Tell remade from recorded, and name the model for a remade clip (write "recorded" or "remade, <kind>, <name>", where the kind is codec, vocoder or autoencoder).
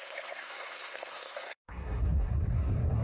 remade, codec, SNAC